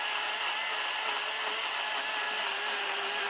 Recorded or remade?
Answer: recorded